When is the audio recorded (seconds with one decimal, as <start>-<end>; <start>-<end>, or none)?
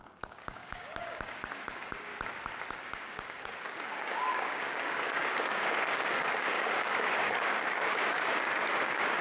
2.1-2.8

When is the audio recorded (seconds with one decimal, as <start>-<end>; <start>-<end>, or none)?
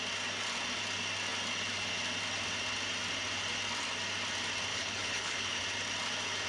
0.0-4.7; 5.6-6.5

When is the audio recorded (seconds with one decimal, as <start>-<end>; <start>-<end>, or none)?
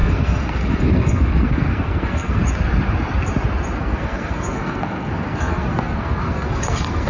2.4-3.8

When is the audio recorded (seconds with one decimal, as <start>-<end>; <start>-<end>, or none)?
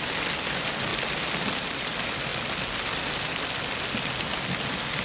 0.0-5.0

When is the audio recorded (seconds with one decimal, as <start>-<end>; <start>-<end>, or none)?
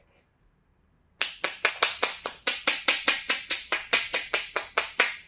0.0-2.1; 4.3-5.3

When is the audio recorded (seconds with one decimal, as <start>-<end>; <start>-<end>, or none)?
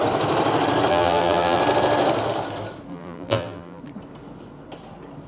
0.0-0.9; 1.6-2.9; 3.8-5.3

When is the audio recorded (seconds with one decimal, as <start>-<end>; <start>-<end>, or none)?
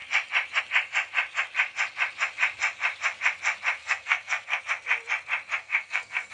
0.0-3.8; 4.6-5.6